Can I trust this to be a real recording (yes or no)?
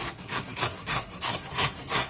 no